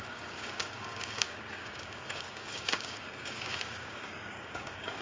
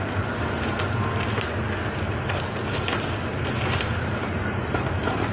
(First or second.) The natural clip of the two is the second